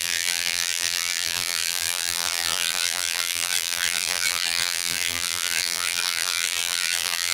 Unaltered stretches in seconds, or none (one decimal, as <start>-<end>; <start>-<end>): none